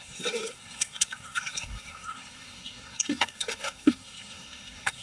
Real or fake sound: fake